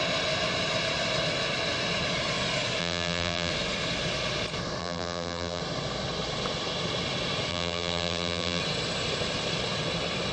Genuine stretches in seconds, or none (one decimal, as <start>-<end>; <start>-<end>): 0.0-2.8; 3.5-4.8; 5.6-7.5; 8.6-10.3

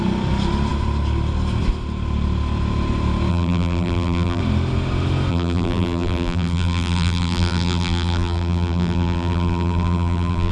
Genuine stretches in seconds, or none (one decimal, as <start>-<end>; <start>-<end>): 0.0-3.3; 4.4-5.3